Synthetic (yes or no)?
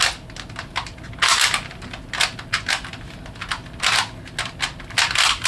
no